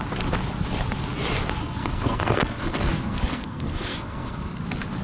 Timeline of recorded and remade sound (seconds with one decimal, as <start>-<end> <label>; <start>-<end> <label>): 0.0-1.6 recorded; 1.6-4.6 remade; 4.6-5.0 recorded